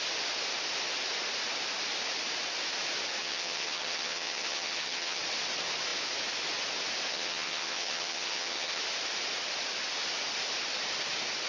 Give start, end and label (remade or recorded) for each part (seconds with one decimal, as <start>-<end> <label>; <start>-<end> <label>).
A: 0.0-3.2 recorded; 3.2-5.2 remade; 5.2-7.1 recorded; 7.1-8.8 remade; 8.8-11.5 recorded